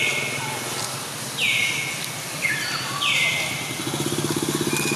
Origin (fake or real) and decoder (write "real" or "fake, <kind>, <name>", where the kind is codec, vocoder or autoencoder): real